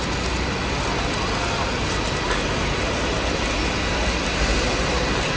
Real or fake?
real